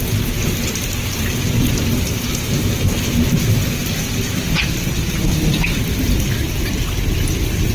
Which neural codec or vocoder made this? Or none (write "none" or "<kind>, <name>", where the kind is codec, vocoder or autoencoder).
none